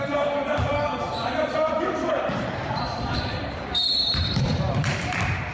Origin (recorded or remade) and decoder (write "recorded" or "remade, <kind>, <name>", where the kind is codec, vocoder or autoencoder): remade, vocoder, BigVGAN v2